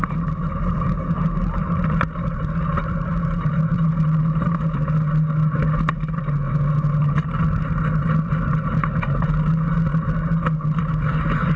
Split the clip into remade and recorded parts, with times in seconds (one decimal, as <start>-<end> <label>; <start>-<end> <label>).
0.0-1.4 recorded; 1.4-2.4 remade; 2.4-2.8 recorded; 2.8-4.6 remade; 4.6-11.6 recorded